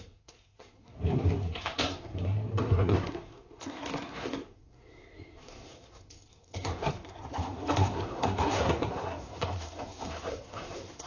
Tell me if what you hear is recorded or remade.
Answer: remade